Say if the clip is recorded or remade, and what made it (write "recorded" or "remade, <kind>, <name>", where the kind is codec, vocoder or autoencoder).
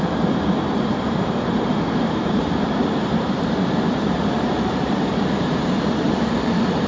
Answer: remade, vocoder, BigVGAN v2